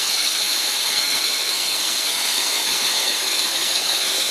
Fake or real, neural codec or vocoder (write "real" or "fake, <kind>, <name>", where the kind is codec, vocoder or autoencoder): fake, codec, SNAC